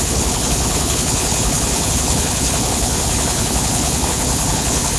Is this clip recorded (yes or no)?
no